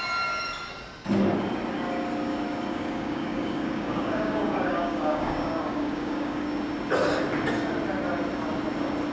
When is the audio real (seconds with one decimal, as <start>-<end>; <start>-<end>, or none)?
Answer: 0.0-2.7; 6.5-9.1

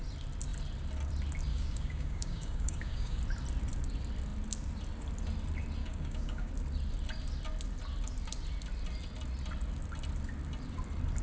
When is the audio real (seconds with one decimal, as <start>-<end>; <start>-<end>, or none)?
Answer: 0.0-1.5; 3.2-5.8; 6.5-11.2